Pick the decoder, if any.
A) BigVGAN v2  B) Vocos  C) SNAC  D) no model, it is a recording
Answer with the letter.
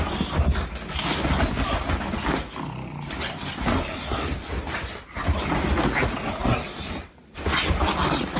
D